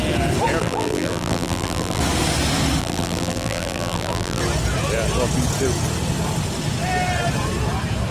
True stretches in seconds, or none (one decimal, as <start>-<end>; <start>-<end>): 0.0-0.6; 2.0-2.8; 4.4-8.1